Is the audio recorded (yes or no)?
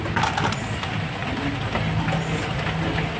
yes